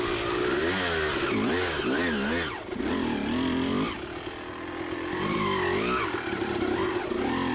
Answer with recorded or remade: recorded